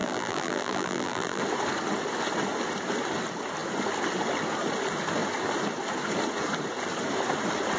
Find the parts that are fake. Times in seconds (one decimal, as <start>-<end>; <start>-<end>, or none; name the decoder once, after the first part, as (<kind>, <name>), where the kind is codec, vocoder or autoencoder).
0.0-1.4 (vocoder, BigVGAN v2)